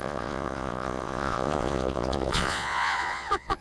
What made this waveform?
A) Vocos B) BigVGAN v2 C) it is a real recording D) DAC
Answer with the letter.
A